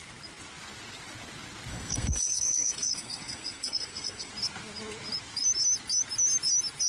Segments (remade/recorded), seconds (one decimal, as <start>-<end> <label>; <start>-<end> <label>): 0.0-1.7 recorded; 1.7-4.3 remade; 4.3-6.9 recorded